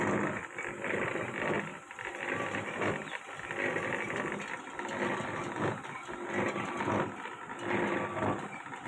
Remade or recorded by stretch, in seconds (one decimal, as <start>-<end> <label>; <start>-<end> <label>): 0.0-8.9 recorded